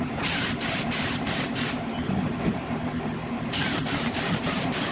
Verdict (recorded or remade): remade